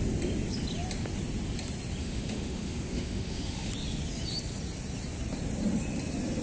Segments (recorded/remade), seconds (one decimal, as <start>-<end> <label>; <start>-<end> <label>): 0.0-2.0 recorded; 2.0-3.7 remade; 3.7-6.4 recorded